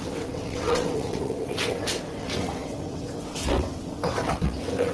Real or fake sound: fake